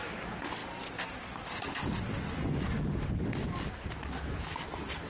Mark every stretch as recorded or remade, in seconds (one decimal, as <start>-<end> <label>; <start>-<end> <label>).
0.0-5.1 recorded